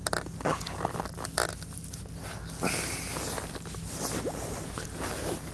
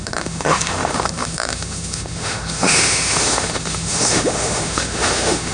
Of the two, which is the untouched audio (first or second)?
first